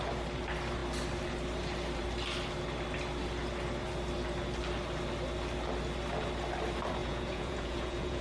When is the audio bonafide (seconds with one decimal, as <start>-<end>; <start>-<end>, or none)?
0.0-7.0